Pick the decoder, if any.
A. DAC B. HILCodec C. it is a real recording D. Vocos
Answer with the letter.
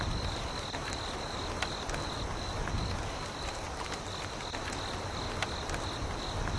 C